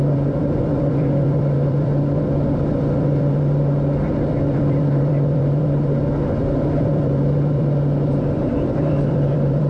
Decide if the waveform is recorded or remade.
remade